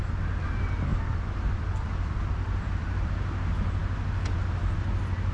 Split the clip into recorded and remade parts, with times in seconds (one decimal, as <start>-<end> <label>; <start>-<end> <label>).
0.0-0.9 recorded; 0.9-3.1 remade; 3.1-5.3 recorded

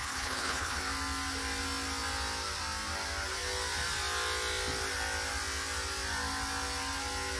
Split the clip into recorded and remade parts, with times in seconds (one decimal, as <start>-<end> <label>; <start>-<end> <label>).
0.0-0.8 remade; 0.8-7.4 recorded